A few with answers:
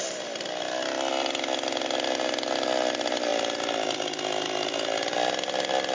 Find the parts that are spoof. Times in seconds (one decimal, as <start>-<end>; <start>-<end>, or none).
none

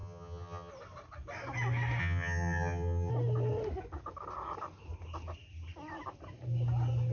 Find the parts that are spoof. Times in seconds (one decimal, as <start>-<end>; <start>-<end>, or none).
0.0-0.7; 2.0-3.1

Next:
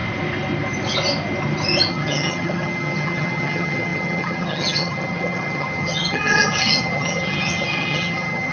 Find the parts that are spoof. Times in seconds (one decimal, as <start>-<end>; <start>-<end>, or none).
1.9-8.5

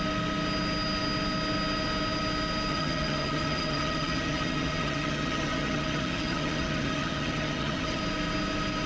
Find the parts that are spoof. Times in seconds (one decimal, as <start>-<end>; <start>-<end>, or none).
2.7-8.0

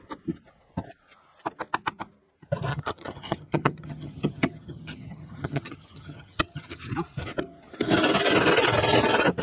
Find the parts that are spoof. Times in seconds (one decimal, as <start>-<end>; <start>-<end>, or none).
2.7-6.9

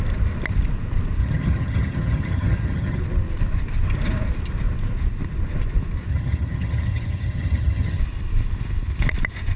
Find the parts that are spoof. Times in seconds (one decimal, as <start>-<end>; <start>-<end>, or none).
1.2-3.0; 6.1-8.0